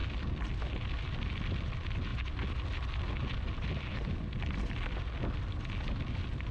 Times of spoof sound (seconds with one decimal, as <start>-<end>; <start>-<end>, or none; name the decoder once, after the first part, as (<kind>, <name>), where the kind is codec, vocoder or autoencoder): none